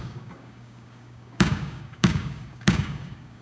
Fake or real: fake